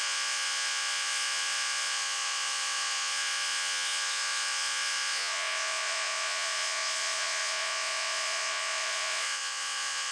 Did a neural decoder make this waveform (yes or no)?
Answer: yes